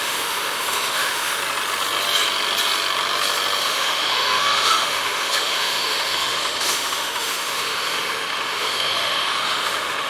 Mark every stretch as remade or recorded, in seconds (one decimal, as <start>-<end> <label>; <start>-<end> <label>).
0.0-1.4 remade; 1.4-3.6 recorded; 3.6-10.1 remade

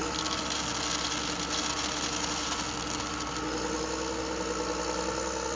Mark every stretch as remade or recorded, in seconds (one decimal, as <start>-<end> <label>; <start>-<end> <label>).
0.0-5.6 recorded

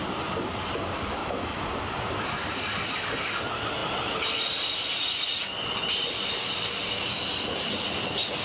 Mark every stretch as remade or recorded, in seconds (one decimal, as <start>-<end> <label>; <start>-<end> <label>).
0.0-1.2 recorded; 1.2-1.7 remade; 1.7-8.4 recorded

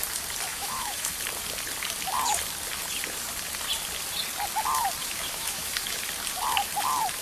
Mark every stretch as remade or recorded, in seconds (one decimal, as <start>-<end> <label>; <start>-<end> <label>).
0.0-0.5 recorded; 0.5-1.1 remade; 1.1-5.0 recorded; 5.0-6.0 remade; 6.0-7.2 recorded

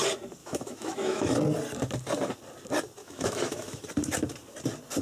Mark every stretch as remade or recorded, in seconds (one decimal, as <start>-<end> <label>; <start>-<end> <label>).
0.0-0.4 recorded; 0.4-1.4 remade; 1.4-3.0 recorded; 3.0-3.8 remade; 3.8-5.0 recorded

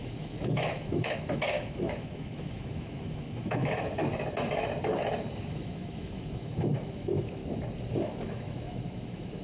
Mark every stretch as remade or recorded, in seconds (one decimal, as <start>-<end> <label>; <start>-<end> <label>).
0.0-4.0 remade; 4.0-5.5 recorded; 5.5-7.4 remade; 7.4-7.9 recorded; 7.9-9.4 remade